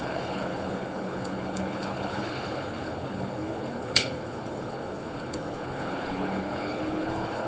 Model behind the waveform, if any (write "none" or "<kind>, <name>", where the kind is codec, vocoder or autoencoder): codec, HILCodec